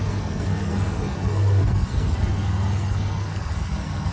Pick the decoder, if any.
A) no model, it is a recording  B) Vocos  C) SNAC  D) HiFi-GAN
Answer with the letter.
C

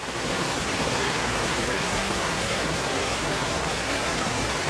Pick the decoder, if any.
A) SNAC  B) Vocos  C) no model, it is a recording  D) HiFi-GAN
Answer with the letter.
A